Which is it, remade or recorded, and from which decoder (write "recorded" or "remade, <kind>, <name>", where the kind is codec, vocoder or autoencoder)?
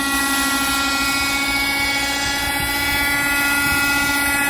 recorded